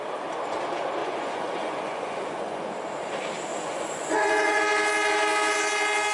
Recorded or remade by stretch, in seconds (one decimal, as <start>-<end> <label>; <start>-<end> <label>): 0.0-1.0 recorded; 1.0-2.7 remade; 2.7-3.5 recorded; 3.5-4.6 remade; 4.6-6.1 recorded